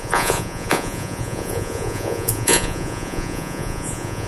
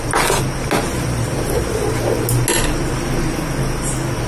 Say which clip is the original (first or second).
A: second